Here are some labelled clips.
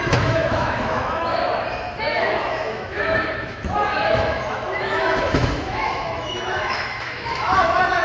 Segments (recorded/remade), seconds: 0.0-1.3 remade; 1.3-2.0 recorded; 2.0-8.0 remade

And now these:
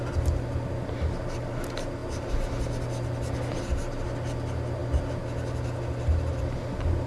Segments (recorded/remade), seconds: 0.0-7.1 recorded

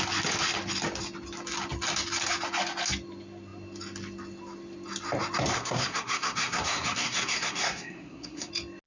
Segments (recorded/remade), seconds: 0.0-5.5 recorded; 5.5-8.5 remade; 8.5-8.9 recorded

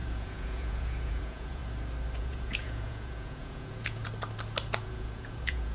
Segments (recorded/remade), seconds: 0.0-1.6 remade; 1.6-2.2 recorded; 2.2-4.0 remade; 4.0-4.8 recorded; 4.8-5.7 remade